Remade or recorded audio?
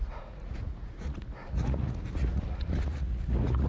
remade